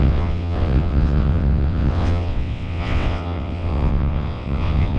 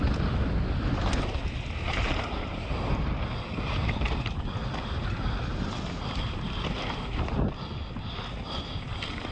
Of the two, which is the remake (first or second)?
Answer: first